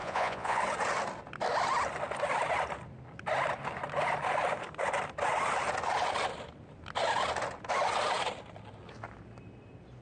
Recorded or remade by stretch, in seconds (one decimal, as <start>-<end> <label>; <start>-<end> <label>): 0.0-0.6 remade; 0.6-10.0 recorded